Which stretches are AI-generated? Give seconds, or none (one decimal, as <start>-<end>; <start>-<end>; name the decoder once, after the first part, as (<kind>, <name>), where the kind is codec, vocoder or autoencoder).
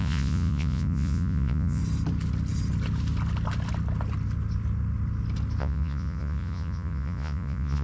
0.0-1.8 (vocoder, Vocos); 5.6-7.8